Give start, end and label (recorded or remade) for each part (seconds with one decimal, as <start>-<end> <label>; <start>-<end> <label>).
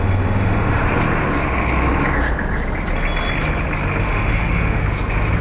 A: 0.0-0.8 remade; 0.8-4.0 recorded; 4.0-4.8 remade; 4.8-5.4 recorded